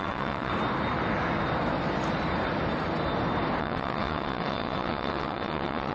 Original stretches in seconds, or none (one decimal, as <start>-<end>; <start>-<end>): 0.5-3.6